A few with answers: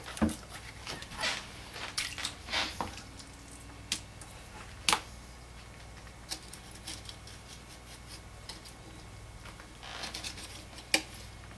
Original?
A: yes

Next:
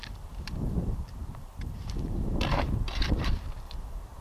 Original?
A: no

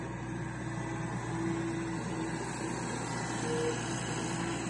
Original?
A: yes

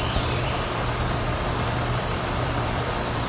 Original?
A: no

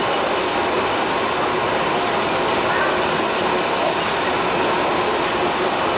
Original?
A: yes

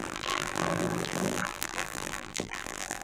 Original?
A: no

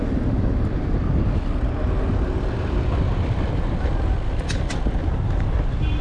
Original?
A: yes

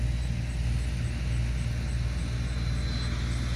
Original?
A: yes